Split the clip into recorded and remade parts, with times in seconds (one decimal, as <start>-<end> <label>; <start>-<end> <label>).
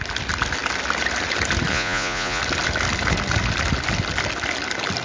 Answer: 0.0-1.7 recorded; 1.7-2.4 remade; 2.4-5.0 recorded